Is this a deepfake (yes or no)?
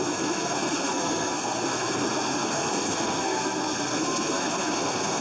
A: yes